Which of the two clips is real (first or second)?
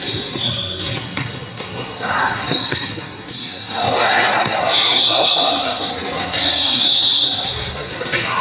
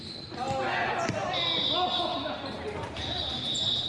second